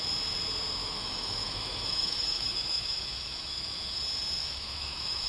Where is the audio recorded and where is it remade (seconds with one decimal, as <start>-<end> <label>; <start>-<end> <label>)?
0.0-0.8 recorded; 0.8-4.0 remade; 4.0-4.4 recorded; 4.4-5.3 remade

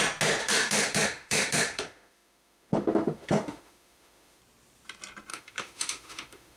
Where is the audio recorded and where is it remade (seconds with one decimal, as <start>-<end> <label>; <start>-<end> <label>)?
0.0-0.4 recorded; 0.4-4.4 remade; 4.4-5.3 recorded; 5.3-6.6 remade

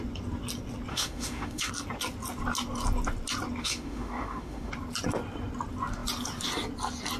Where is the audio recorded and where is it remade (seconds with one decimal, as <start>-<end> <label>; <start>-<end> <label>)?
0.0-0.9 recorded; 0.9-1.7 remade; 1.7-3.6 recorded; 3.6-4.7 remade; 4.7-7.2 recorded

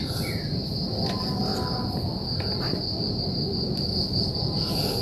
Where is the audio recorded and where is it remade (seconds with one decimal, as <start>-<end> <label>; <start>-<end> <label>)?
0.0-5.0 recorded

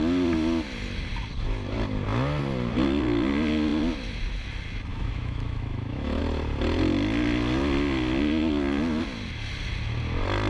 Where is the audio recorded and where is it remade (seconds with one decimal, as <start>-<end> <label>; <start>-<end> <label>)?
0.0-4.9 recorded; 4.9-6.2 remade; 6.2-10.5 recorded

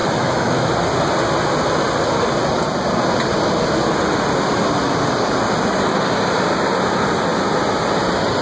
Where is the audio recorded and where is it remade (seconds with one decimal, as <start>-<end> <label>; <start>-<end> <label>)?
0.0-0.7 remade; 0.7-8.4 recorded